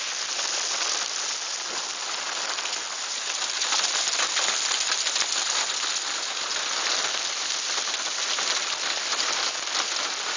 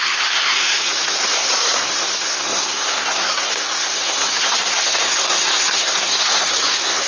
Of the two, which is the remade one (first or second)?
second